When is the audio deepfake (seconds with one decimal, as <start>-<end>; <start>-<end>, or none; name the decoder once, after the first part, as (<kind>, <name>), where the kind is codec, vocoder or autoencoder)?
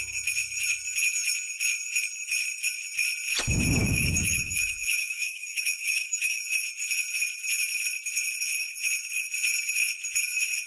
3.8-6.4 (autoencoder, DAC-VAE)